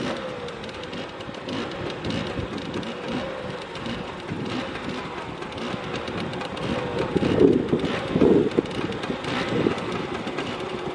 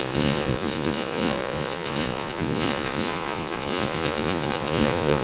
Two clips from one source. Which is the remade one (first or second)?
second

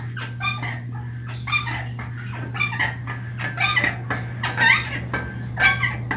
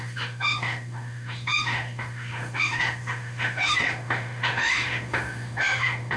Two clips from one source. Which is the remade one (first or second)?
second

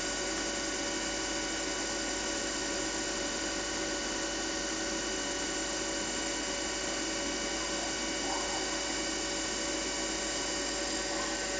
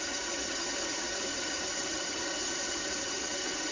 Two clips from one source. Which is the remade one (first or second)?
second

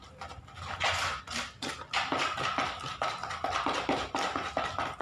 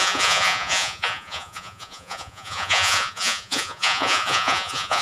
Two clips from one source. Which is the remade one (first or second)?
second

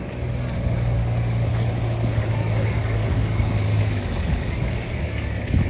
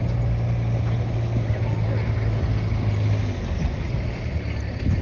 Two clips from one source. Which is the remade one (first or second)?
first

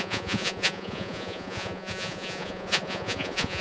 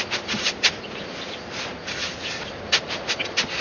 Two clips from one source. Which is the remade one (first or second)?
first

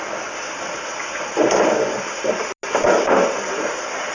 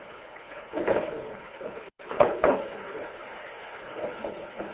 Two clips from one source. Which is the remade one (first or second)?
second